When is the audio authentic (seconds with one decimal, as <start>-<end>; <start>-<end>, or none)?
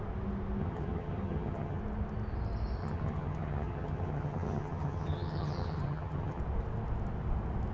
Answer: 0.0-0.6; 1.8-2.8; 6.4-7.7